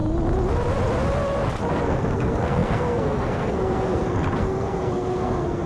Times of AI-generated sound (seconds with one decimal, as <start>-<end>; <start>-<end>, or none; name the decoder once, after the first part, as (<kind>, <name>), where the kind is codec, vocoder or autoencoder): 1.7-5.7 (codec, SNAC)